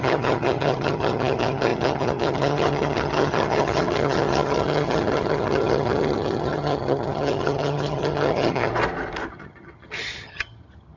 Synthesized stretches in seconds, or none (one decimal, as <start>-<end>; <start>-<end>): 0.0-8.7; 9.3-11.0